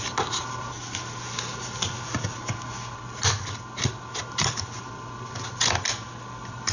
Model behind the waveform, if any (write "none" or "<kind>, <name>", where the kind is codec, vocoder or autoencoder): none